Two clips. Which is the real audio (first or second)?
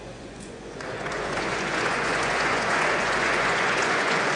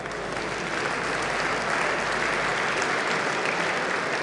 second